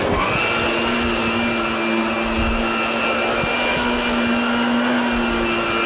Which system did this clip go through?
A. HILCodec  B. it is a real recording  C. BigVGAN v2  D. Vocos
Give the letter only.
B